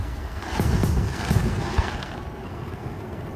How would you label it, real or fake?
fake